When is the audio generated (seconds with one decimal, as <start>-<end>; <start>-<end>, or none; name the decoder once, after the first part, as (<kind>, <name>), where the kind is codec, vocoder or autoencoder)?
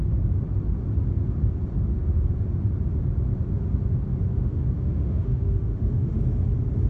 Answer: 4.3-6.2 (autoencoder, DAC-VAE)